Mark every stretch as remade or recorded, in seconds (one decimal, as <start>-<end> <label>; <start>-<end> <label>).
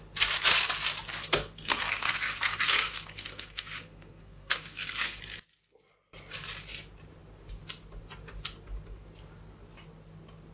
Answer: 0.0-1.2 recorded; 1.2-5.2 remade; 5.2-10.5 recorded